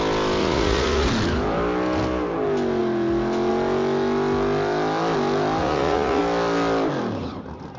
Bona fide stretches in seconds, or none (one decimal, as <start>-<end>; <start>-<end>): 0.0-0.4; 1.1-5.6; 6.2-7.8